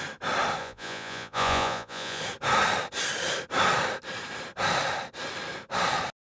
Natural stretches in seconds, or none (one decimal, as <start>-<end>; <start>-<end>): 0.0-0.6; 2.2-6.3